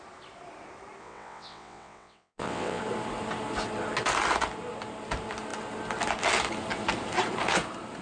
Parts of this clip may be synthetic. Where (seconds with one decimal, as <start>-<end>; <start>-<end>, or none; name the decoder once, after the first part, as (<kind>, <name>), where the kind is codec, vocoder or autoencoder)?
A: 1.0-2.8 (vocoder, WaveNeXt)